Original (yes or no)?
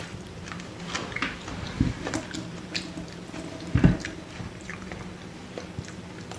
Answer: yes